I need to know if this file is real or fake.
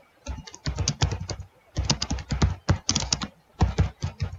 real